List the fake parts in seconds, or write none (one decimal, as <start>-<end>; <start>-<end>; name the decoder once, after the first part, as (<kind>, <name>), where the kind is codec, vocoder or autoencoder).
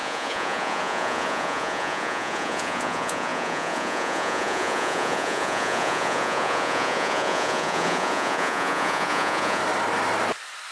0.0-9.6 (vocoder, Vocos)